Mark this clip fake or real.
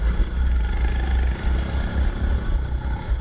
real